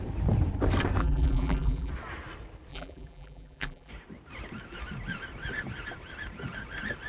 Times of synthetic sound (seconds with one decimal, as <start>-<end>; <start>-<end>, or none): 1.0-1.9; 2.7-3.9